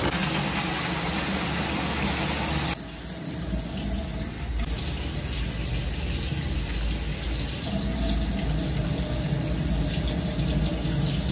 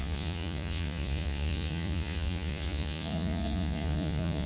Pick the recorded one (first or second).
first